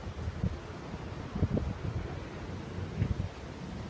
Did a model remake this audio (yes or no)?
no